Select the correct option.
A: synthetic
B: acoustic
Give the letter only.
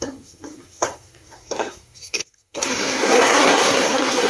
A